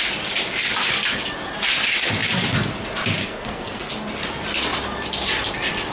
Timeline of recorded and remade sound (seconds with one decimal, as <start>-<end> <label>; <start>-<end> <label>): 0.0-3.2 recorded; 3.2-3.9 remade; 3.9-5.9 recorded